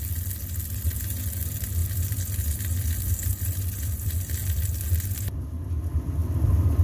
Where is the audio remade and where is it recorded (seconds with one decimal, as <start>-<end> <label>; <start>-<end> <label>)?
0.0-1.8 recorded; 1.8-4.3 remade; 4.3-6.2 recorded; 6.2-6.8 remade